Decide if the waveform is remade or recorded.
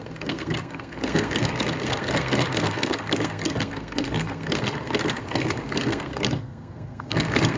remade